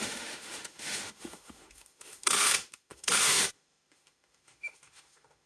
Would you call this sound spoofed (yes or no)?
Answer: yes